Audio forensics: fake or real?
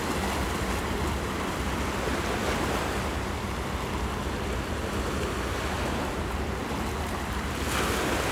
real